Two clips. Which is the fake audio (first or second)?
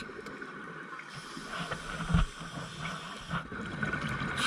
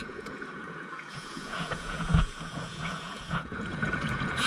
second